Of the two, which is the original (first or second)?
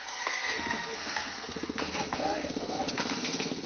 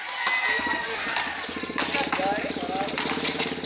second